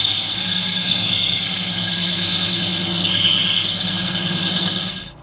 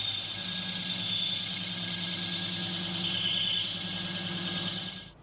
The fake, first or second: first